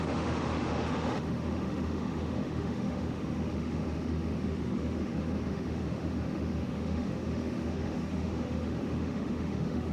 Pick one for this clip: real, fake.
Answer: fake